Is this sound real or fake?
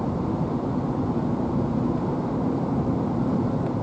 fake